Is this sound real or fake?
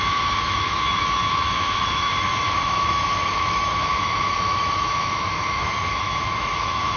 fake